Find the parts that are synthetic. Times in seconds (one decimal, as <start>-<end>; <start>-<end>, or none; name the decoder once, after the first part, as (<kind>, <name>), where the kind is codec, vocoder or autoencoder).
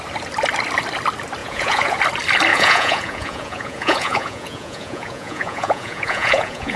1.4-2.0 (vocoder, Vocos); 2.5-6.8